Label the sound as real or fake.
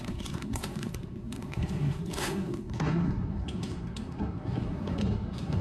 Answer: fake